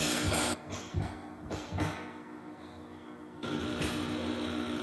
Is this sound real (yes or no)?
no